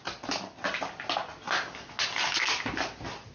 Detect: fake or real real